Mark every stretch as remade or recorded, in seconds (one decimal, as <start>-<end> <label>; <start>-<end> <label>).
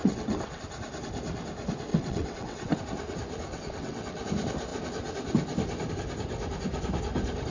0.0-0.6 remade; 0.6-1.9 recorded; 1.9-2.8 remade; 2.8-3.5 recorded; 3.5-4.2 remade; 4.2-7.5 recorded